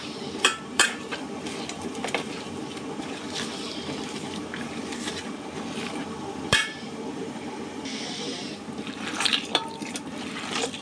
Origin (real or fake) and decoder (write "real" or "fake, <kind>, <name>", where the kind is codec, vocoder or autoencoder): fake, vocoder, BigVGAN v2